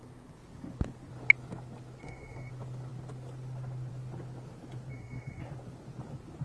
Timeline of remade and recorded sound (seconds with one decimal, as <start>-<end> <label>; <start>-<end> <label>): 0.0-2.0 recorded; 2.0-2.5 remade; 2.5-4.9 recorded; 4.9-5.4 remade; 5.4-6.4 recorded

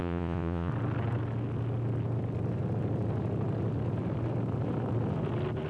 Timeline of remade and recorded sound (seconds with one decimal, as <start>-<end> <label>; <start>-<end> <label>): 0.0-0.7 remade; 0.7-5.7 recorded

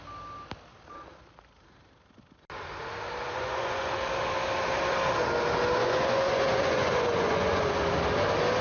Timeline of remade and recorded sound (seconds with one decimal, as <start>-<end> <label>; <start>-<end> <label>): 0.0-3.2 recorded; 3.2-3.9 remade; 3.9-5.8 recorded; 5.8-7.6 remade; 7.6-8.6 recorded